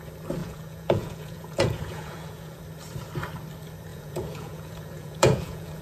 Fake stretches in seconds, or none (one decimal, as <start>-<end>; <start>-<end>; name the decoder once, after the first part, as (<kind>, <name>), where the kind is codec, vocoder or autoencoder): 0.4-2.6 (vocoder, Vocos); 3.9-5.8